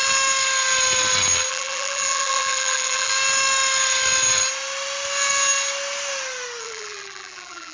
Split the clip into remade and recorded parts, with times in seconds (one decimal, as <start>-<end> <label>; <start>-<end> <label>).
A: 0.0-1.5 recorded; 1.5-3.1 remade; 3.1-6.6 recorded; 6.6-7.7 remade